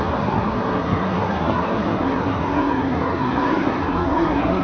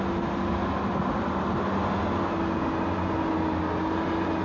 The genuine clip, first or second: second